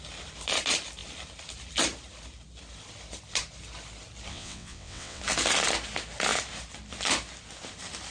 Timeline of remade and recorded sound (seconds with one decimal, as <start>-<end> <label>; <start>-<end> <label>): 0.0-4.3 recorded; 4.3-5.2 remade; 5.2-8.1 recorded